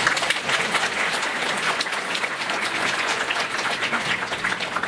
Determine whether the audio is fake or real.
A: fake